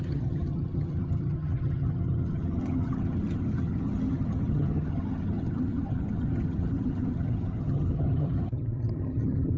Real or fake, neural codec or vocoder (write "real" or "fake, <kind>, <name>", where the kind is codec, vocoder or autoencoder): fake, vocoder, HiFi-GAN